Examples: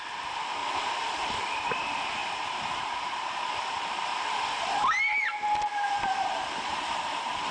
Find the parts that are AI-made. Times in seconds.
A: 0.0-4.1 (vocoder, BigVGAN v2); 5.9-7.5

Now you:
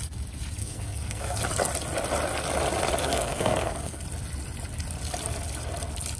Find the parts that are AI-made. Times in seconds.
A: 0.6-1.4 (codec, SNAC); 3.0-4.0